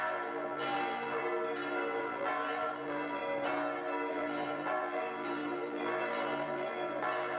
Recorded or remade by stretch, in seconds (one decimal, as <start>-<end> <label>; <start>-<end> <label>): 0.0-1.2 remade; 1.2-2.0 recorded; 2.0-3.2 remade; 3.2-4.1 recorded; 4.1-7.4 remade